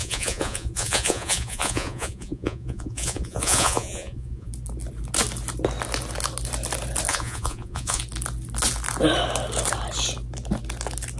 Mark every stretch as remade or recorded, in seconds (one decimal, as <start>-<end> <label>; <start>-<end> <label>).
0.0-4.5 remade; 4.5-7.1 recorded; 7.1-8.0 remade; 8.0-11.2 recorded